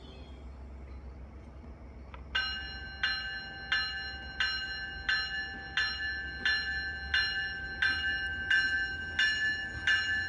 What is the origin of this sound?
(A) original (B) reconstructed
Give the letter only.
A